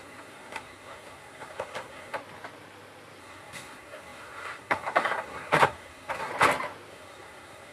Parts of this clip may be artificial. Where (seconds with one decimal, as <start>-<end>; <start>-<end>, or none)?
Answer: 0.0-2.2; 3.2-6.3; 6.9-7.7

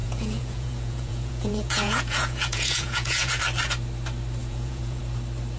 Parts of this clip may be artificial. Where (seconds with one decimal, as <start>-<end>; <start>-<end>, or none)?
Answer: 0.0-3.4; 4.4-5.0